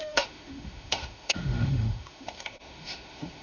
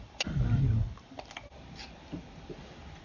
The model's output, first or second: first